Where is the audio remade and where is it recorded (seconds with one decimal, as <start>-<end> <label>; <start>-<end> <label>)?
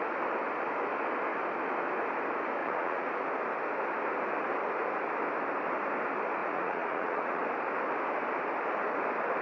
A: 0.0-2.6 recorded; 2.6-3.1 remade; 3.1-6.4 recorded; 6.4-7.4 remade; 7.4-9.4 recorded